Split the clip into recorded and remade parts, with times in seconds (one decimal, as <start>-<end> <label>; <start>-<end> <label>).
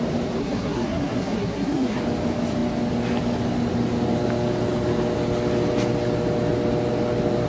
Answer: 0.0-0.4 recorded; 0.4-2.0 remade; 2.0-7.5 recorded